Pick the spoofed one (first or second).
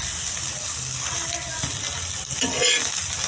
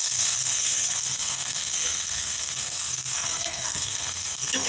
second